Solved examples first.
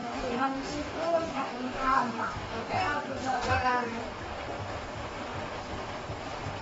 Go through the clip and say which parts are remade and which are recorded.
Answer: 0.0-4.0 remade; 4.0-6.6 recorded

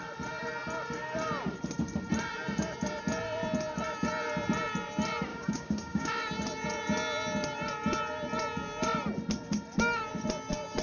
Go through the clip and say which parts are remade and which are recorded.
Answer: 0.0-5.3 recorded; 5.3-6.1 remade; 6.1-10.8 recorded